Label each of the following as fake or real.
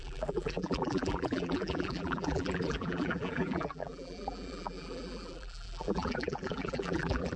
fake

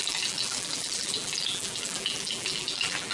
fake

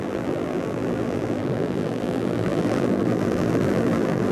fake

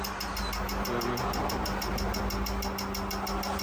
real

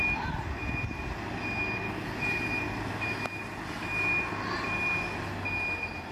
real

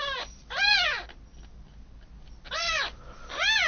real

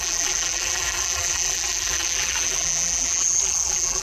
fake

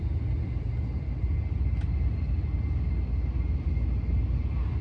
real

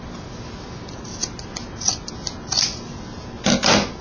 real